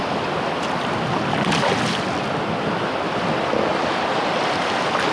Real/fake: real